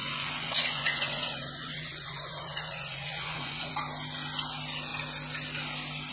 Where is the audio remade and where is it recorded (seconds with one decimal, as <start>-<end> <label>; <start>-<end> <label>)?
0.0-3.7 remade; 3.7-6.1 recorded